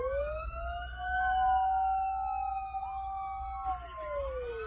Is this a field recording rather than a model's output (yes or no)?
yes